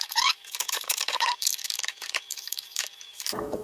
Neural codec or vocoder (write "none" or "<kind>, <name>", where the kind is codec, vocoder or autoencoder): codec, DAC